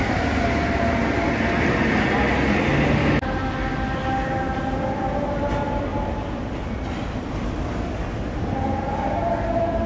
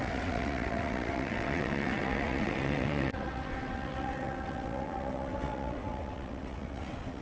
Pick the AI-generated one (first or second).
second